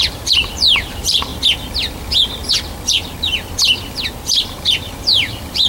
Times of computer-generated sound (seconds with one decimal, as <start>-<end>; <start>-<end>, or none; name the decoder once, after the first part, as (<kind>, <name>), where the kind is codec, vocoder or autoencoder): 0.0-1.3 (vocoder, BigVGAN v2); 4.5-5.7